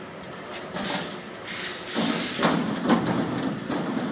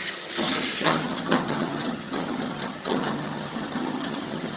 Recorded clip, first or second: first